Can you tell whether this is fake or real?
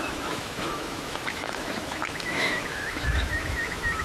fake